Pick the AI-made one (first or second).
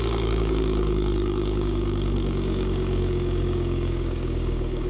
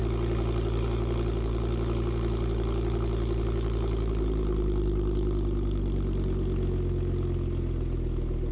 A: first